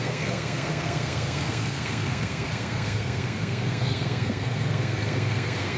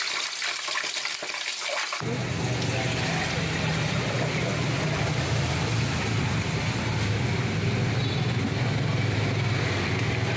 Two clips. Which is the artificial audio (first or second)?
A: first